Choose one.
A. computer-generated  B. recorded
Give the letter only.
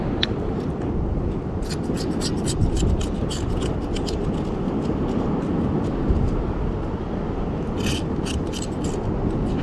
B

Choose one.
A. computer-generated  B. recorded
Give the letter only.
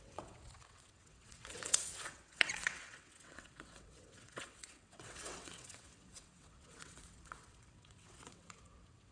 A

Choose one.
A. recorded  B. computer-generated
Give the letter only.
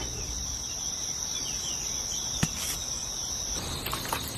A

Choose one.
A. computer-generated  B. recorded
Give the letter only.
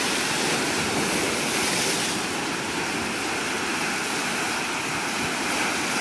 B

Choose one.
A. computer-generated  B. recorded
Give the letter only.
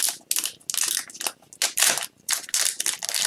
B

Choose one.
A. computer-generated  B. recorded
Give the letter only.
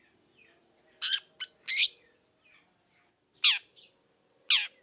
B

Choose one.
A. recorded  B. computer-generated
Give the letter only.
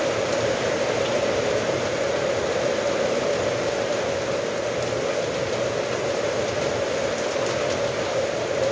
A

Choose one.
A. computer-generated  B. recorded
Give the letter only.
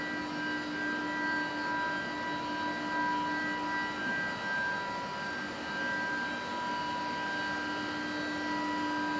B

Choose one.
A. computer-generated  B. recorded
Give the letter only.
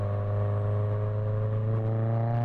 B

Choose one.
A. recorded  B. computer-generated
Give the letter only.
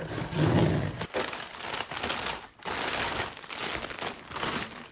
A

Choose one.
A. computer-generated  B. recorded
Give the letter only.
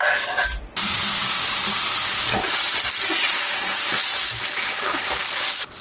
B